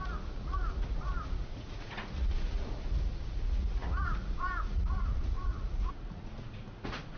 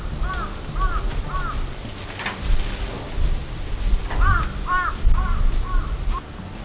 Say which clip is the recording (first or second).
second